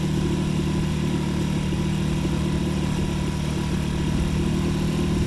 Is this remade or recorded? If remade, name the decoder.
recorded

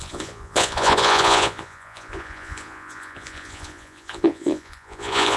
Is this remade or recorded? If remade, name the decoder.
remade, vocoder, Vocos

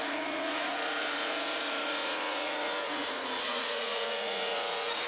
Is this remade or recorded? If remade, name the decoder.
remade, vocoder, Vocos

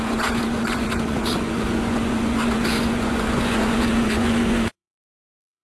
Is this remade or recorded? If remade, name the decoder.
remade, vocoder, Vocos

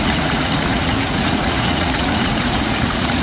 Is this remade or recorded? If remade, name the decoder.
remade, vocoder, Vocos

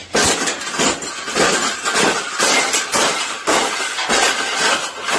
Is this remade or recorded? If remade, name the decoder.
recorded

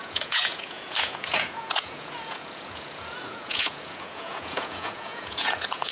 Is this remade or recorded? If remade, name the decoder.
remade, vocoder, Vocos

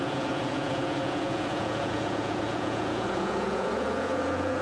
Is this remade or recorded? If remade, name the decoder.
remade, vocoder, Vocos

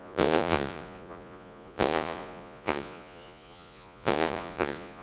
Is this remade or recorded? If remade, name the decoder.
remade, vocoder, Vocos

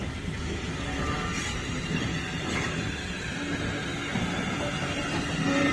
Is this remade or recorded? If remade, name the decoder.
recorded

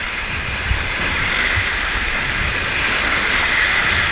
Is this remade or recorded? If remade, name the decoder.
recorded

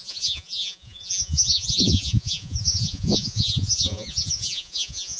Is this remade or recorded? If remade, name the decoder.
remade, vocoder, Vocos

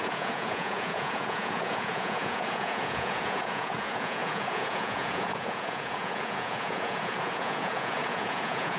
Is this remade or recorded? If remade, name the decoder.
remade, vocoder, Vocos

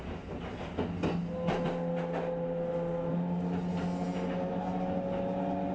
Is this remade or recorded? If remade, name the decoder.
recorded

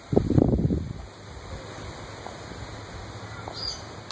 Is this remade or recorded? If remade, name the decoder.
recorded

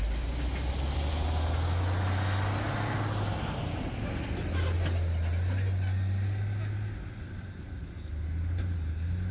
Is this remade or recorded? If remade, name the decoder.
recorded